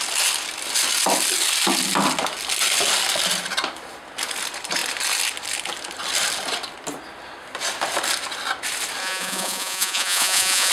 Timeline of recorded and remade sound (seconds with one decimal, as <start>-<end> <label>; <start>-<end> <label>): 0.0-9.0 recorded; 9.0-10.7 remade